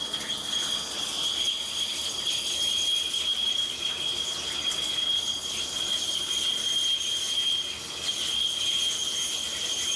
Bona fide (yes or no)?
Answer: yes